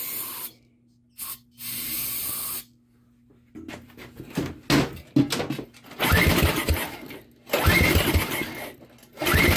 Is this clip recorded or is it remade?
recorded